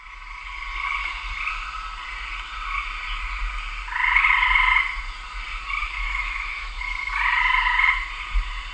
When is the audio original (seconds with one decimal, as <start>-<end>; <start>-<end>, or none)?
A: 0.0-5.8; 6.8-8.7

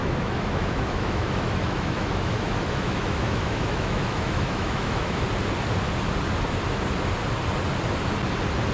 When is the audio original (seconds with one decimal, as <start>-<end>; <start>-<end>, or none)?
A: 5.2-8.7

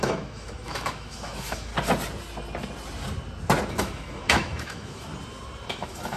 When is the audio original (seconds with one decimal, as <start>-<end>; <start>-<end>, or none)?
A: 1.7-3.7; 5.1-5.7